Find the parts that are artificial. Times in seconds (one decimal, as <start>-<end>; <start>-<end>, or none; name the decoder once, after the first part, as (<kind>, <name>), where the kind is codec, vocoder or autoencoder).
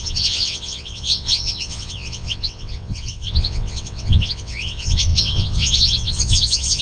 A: 0.0-6.8 (vocoder, WaveNeXt)